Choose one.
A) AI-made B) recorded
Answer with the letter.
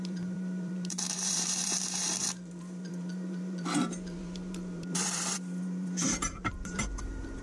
A